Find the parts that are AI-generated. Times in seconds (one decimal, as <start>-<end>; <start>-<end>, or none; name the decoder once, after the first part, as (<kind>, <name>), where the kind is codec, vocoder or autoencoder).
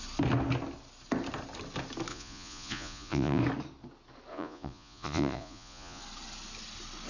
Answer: 2.1-3.4 (vocoder, Vocos); 4.3-6.0